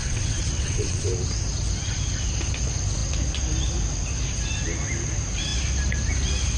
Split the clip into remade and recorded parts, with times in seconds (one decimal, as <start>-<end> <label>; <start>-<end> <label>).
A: 0.0-1.1 remade; 1.1-6.6 recorded